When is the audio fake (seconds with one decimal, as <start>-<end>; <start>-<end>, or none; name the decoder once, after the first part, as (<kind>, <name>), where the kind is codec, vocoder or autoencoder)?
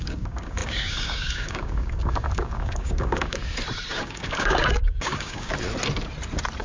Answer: 0.0-3.4 (codec, DAC); 3.9-5.5